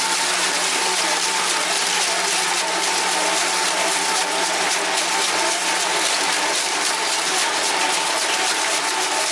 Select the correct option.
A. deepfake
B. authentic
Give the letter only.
B